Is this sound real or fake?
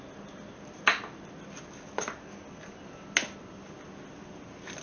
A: real